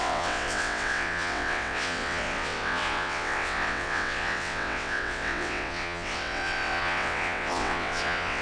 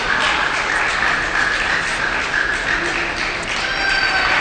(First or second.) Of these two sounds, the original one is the second